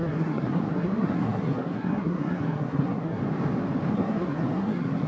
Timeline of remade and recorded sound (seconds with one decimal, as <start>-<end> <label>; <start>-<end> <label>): 0.0-3.2 remade; 3.2-3.9 recorded; 3.9-5.1 remade